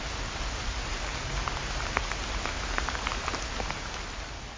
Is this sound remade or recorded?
recorded